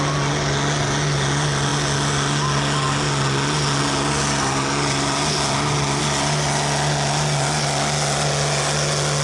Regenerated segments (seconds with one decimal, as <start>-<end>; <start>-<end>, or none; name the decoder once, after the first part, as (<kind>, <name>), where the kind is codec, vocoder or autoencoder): none